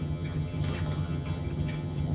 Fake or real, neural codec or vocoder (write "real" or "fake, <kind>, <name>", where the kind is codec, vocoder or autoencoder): fake, vocoder, HiFi-GAN